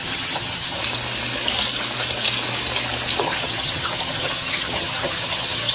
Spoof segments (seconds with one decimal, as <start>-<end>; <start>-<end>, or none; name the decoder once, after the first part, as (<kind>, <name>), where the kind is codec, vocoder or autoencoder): 0.0-0.8 (vocoder, HiFi-GAN); 3.2-5.7